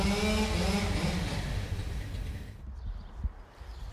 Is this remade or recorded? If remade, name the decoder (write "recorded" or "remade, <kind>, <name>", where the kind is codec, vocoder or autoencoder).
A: recorded